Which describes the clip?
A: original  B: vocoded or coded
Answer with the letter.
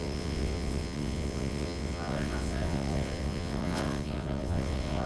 B